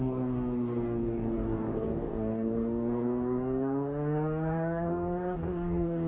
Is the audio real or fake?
fake